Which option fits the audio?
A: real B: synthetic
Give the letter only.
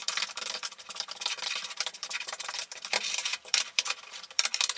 B